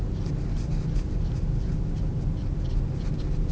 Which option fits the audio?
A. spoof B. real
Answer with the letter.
B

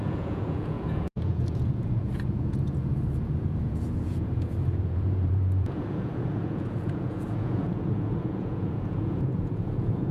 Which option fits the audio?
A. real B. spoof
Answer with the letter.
B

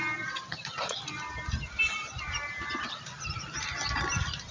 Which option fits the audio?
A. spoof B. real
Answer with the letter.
B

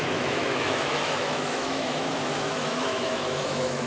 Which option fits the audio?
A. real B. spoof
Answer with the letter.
B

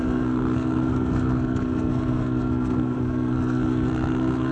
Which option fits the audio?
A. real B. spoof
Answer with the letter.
B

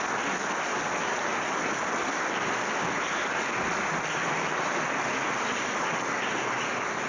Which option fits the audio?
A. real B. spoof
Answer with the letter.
A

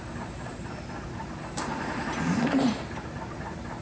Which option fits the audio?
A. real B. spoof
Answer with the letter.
B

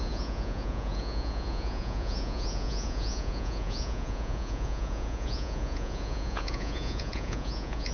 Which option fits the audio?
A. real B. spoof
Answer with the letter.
B